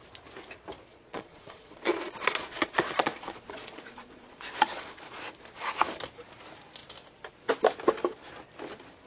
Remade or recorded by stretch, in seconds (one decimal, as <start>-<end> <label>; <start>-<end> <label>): 0.0-0.9 recorded; 0.9-5.2 remade; 5.2-9.1 recorded